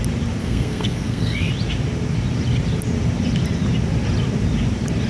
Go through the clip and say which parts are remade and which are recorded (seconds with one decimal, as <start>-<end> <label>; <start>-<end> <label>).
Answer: 0.0-0.4 recorded; 0.4-1.5 remade; 1.5-5.1 recorded